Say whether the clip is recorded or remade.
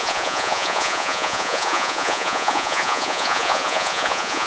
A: remade